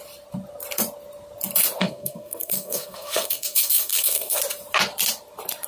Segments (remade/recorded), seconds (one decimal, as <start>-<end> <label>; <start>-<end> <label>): 0.0-1.8 recorded; 1.8-4.4 remade; 4.4-5.7 recorded